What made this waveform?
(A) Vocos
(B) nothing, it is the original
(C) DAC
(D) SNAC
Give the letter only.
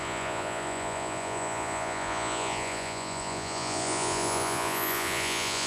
A